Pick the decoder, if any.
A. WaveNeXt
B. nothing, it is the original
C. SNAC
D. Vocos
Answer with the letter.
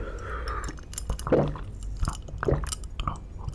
B